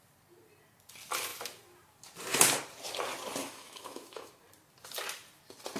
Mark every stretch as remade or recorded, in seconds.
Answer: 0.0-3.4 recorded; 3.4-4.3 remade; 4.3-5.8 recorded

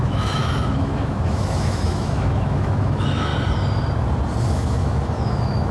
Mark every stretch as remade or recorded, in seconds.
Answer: 0.0-3.3 remade; 3.3-4.4 recorded; 4.4-5.7 remade

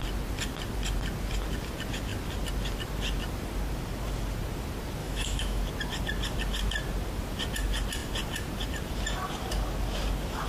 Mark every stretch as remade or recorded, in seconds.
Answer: 0.0-5.0 recorded; 5.0-5.6 remade; 5.6-10.5 recorded

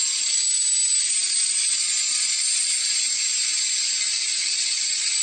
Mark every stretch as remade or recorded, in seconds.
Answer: 0.0-5.2 recorded

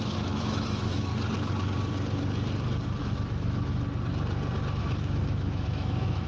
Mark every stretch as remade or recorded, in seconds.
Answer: 0.0-1.1 remade; 1.1-3.0 recorded; 3.0-3.7 remade; 3.7-4.8 recorded; 4.8-6.3 remade

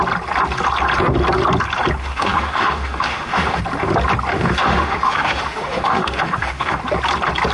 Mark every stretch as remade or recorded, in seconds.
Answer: 0.0-2.0 recorded; 2.0-3.6 remade; 3.6-4.3 recorded; 4.3-6.8 remade; 6.8-7.5 recorded

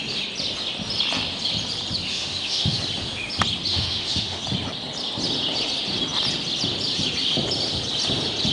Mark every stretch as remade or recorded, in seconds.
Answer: 0.0-2.1 recorded; 2.1-2.8 remade; 2.8-3.7 recorded; 3.7-4.4 remade; 4.4-8.5 recorded

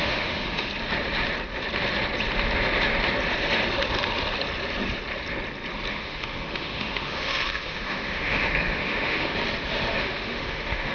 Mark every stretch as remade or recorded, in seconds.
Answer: 0.0-0.7 remade; 0.7-5.9 recorded; 5.9-9.3 remade; 9.3-10.0 recorded; 10.0-10.9 remade